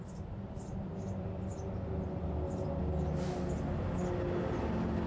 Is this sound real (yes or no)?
yes